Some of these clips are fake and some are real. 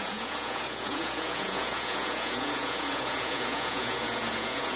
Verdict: fake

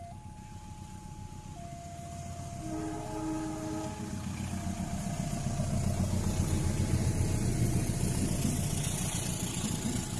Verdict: real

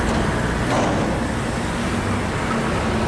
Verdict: real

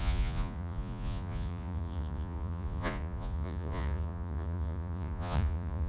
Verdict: fake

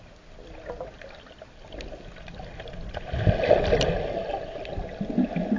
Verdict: real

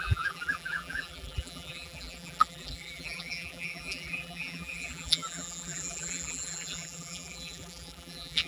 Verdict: fake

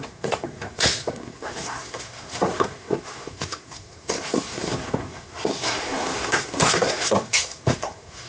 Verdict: fake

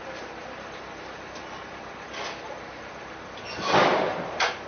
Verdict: fake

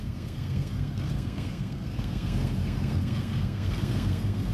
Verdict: fake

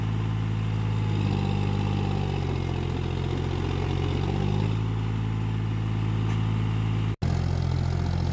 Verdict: real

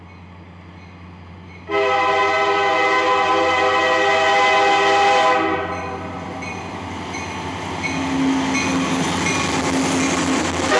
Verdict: real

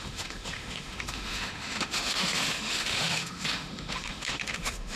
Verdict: fake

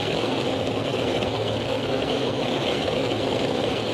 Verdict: fake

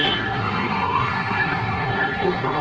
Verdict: fake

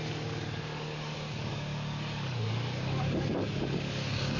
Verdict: fake